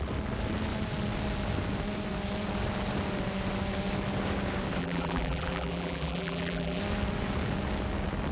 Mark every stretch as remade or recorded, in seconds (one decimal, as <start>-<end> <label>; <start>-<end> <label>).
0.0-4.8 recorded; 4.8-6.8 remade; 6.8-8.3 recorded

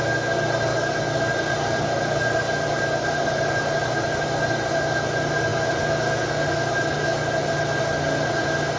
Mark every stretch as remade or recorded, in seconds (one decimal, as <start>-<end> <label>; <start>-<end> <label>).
0.0-0.7 recorded; 0.7-4.9 remade; 4.9-8.8 recorded

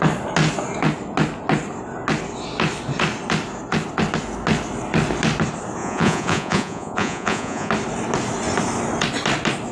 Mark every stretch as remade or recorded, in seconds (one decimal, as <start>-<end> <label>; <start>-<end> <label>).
0.0-5.8 recorded; 5.8-7.7 remade; 7.7-9.7 recorded

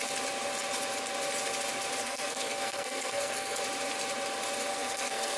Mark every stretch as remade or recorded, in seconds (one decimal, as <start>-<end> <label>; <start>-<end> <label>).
0.0-2.0 recorded; 2.0-3.6 remade; 3.6-4.7 recorded; 4.7-5.4 remade

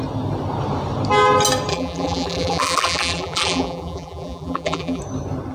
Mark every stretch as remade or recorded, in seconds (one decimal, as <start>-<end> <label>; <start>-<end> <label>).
0.0-1.7 recorded; 1.7-5.0 remade; 5.0-5.5 recorded

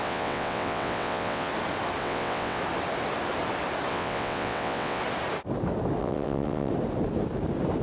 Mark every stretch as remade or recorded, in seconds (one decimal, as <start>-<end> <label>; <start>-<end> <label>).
0.0-1.5 remade; 1.5-2.0 recorded; 2.0-2.6 remade; 2.6-3.9 recorded; 3.9-5.0 remade; 5.0-6.0 recorded; 6.0-6.7 remade; 6.7-7.8 recorded